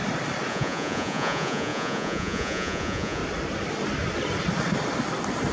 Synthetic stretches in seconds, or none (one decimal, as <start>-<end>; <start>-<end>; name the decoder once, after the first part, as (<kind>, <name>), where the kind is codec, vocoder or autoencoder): 0.5-3.2 (vocoder, Vocos)